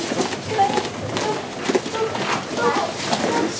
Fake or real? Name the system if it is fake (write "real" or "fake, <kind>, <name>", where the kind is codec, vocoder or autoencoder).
real